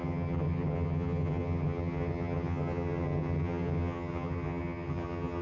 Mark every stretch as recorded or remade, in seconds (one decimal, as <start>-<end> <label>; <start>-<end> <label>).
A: 0.0-5.4 remade